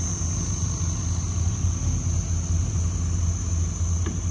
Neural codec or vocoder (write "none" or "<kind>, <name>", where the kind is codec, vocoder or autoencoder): none